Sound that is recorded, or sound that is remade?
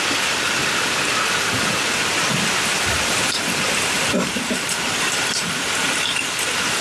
recorded